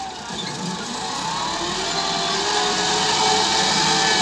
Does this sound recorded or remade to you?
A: recorded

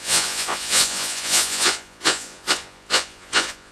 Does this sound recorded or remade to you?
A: remade